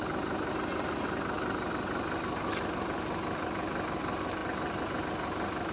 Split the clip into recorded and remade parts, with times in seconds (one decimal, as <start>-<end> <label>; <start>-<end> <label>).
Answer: 0.0-5.7 recorded